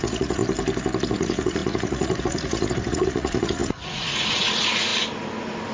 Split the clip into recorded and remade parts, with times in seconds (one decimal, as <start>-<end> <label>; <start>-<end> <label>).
0.0-0.4 remade; 0.4-1.1 recorded; 1.1-4.9 remade; 4.9-5.7 recorded